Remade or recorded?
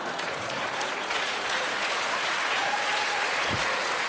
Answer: remade